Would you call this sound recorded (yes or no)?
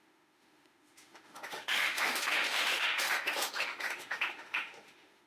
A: no